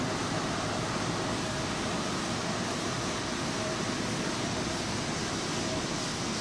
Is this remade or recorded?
recorded